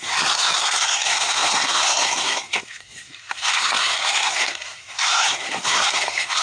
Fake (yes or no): yes